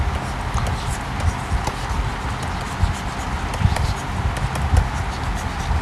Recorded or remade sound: recorded